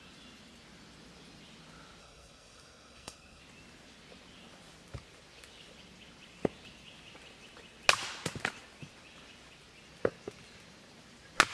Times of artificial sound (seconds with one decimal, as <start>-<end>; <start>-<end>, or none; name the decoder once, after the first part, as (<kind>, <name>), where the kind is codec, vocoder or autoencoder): 2.0-3.4 (codec, SNAC)